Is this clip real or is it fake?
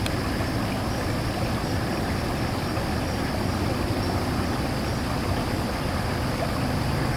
real